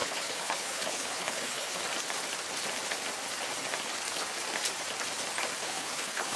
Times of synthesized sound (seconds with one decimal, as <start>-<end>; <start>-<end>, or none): 0.0-1.8; 5.6-6.4